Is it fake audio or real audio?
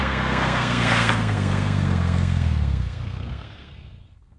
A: fake